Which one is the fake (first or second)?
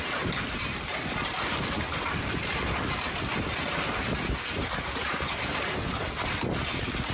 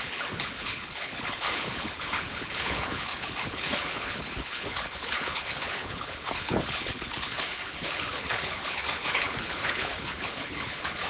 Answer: second